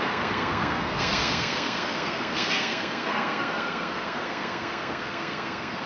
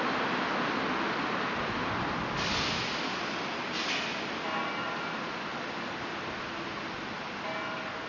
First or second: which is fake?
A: first